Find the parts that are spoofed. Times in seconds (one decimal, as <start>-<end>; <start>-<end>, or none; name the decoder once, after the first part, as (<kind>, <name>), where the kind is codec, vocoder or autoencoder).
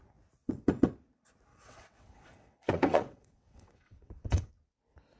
0.4-0.9 (vocoder, WaveNeXt); 1.5-4.5